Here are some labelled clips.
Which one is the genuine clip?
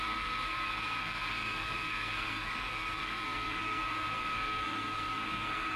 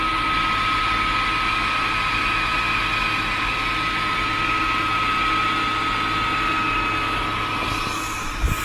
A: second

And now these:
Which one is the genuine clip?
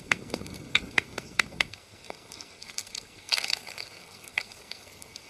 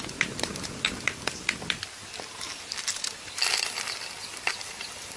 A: second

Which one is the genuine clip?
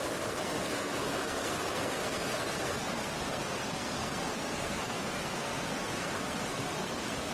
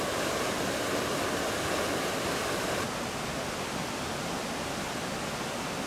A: second